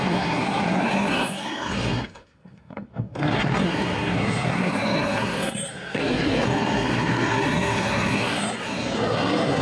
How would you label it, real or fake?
fake